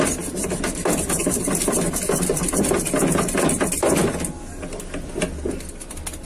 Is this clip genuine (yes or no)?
yes